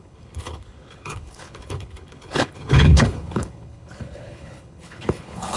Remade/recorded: remade